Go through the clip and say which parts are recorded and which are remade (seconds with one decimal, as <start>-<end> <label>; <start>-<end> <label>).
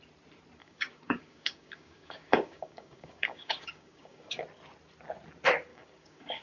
0.0-0.6 recorded; 0.6-4.4 remade; 4.4-5.7 recorded; 5.7-6.4 remade